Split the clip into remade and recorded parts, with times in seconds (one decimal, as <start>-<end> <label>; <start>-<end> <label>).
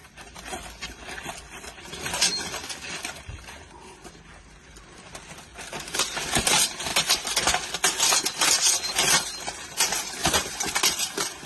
0.0-1.3 remade; 1.3-11.5 recorded